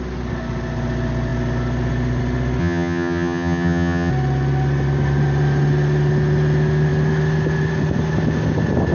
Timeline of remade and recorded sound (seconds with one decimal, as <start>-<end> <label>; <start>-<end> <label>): 0.0-2.6 recorded; 2.6-4.1 remade; 4.1-8.9 recorded